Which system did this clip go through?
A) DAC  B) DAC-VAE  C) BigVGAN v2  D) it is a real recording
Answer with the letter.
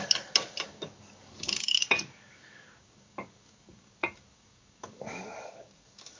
A